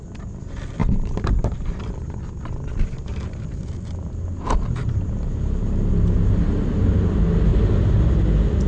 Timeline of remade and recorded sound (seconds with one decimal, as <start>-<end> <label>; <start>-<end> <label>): 0.0-0.8 recorded; 0.8-2.2 remade; 2.2-3.1 recorded; 3.1-5.9 remade; 5.9-8.7 recorded